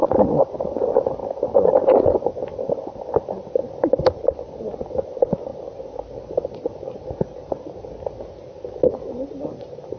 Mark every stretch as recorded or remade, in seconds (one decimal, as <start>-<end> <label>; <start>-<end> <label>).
0.0-10.0 recorded